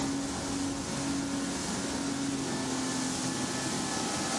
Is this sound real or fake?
real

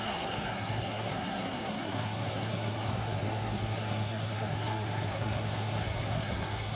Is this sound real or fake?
fake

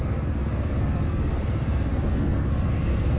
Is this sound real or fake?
fake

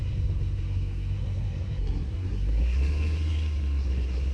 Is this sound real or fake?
fake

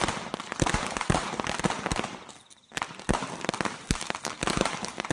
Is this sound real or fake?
real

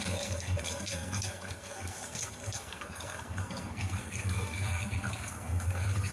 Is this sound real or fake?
fake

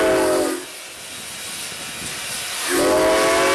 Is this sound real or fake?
real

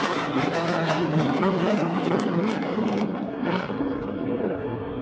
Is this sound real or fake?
fake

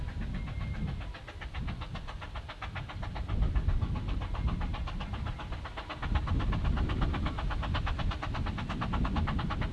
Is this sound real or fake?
real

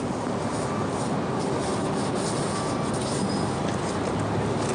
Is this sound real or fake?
real